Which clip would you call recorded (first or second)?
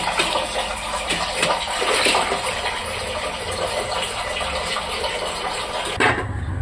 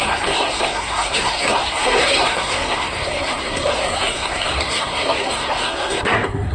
first